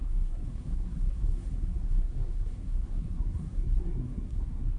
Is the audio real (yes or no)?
no